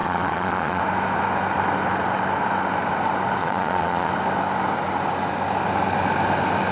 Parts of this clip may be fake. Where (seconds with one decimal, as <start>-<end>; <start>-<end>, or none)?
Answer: 0.0-0.8; 3.4-4.1

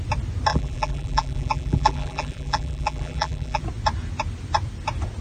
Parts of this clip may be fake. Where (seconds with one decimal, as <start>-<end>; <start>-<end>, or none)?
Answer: 0.5-3.6

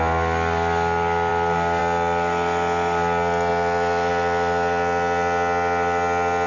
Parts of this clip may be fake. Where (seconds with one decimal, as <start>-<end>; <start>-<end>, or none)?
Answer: none

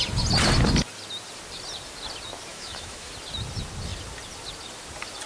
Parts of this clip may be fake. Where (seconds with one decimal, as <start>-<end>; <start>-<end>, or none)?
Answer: 2.5-3.1

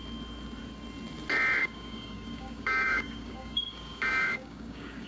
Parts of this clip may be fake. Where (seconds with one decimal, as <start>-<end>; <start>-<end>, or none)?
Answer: 1.6-5.1